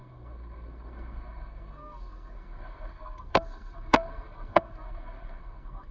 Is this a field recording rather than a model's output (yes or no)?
no